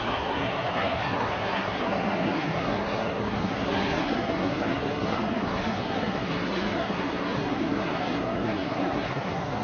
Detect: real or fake fake